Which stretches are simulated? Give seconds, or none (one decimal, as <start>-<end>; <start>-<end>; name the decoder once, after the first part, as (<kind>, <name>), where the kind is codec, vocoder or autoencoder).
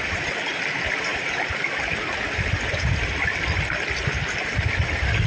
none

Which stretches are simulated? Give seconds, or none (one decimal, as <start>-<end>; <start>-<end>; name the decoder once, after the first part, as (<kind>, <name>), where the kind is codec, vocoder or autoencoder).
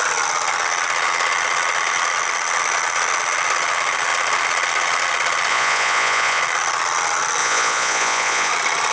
5.5-6.4 (vocoder, Vocos); 7.4-8.5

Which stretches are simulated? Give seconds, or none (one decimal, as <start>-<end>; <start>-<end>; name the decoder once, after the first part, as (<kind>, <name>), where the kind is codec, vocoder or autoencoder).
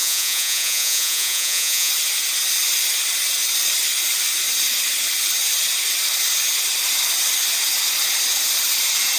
0.0-1.9 (vocoder, Vocos)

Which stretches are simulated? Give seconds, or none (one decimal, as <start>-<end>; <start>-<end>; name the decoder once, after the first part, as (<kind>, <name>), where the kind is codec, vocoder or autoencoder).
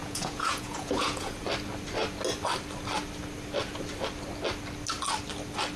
0.0-1.4 (vocoder, Vocos)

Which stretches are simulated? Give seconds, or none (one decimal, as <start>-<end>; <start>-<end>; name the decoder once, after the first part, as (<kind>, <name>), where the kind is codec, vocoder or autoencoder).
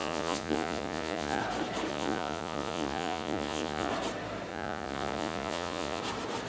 0.0-1.4 (vocoder, Vocos); 1.9-3.9; 4.5-6.0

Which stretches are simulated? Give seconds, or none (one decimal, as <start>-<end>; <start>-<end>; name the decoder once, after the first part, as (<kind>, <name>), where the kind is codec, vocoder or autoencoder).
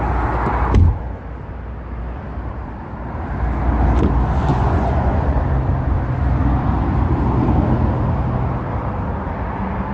4.5-5.4 (vocoder, Vocos)